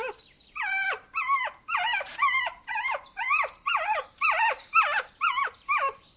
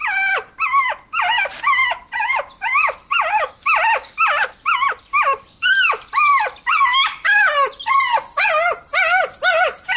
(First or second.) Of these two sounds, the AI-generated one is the first